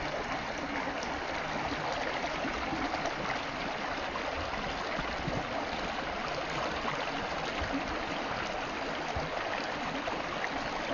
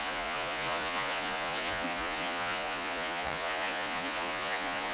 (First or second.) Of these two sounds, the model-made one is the second